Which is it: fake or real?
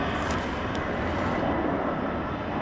real